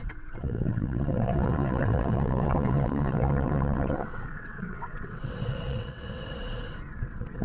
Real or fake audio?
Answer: fake